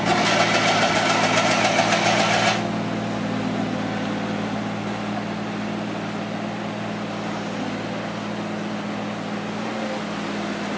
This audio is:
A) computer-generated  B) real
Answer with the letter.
B